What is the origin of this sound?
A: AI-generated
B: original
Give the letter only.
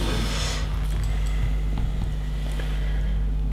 B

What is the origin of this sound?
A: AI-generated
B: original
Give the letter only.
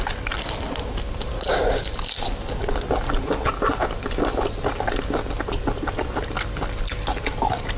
B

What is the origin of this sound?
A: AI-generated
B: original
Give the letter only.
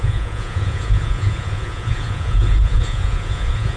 A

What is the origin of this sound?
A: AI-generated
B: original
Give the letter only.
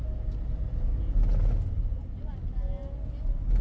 B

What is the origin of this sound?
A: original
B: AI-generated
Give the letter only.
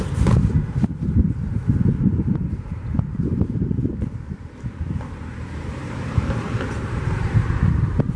B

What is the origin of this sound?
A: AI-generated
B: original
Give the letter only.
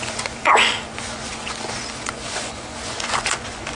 A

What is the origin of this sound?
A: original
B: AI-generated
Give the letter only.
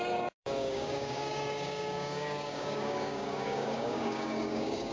B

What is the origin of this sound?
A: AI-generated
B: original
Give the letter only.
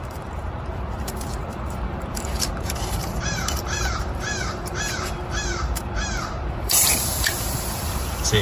A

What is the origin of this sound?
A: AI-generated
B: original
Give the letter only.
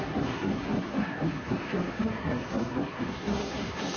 A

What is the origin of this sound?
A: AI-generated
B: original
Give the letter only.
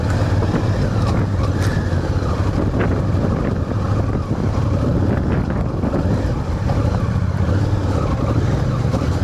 B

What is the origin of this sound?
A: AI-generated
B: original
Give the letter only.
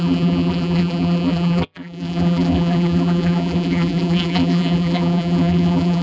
A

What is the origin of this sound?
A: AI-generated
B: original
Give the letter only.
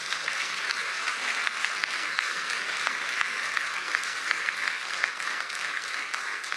A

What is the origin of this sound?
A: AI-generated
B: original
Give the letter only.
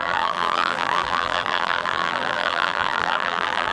A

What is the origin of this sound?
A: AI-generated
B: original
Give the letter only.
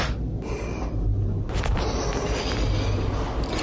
B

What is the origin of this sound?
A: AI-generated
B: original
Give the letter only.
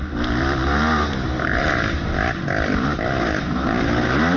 B